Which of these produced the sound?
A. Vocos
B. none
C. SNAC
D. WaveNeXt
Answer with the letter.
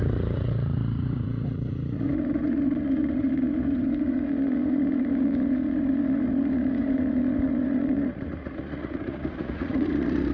A